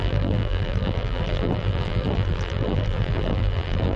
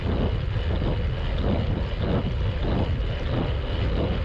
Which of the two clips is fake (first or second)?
first